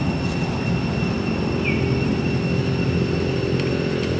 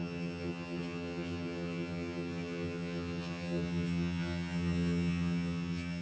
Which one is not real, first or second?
second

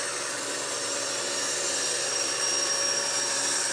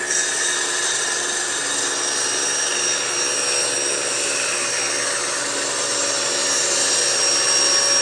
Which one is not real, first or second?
first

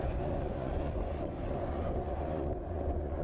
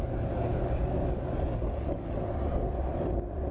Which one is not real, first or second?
first